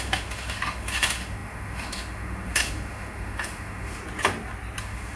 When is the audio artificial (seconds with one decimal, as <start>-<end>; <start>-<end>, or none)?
0.0-4.0; 4.8-5.2